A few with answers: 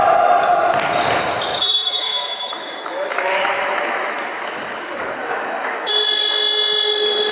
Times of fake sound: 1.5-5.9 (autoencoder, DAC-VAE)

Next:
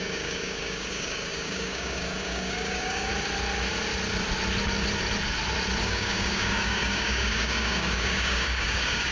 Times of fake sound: 0.0-3.1 (codec, DAC); 5.8-9.1